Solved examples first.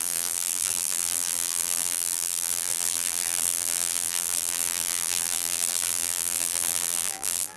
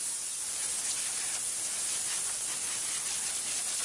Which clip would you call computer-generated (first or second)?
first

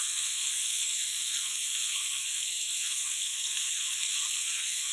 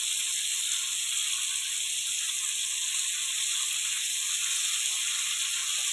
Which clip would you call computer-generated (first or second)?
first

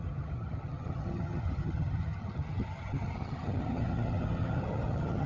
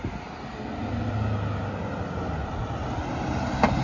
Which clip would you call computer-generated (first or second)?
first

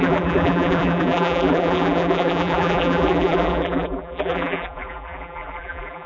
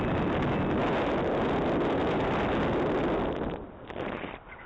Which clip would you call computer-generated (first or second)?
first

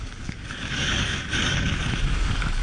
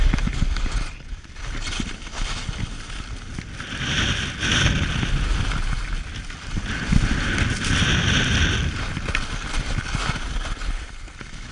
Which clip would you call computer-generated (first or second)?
first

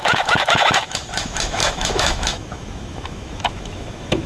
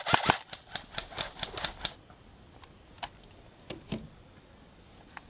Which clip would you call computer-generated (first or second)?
first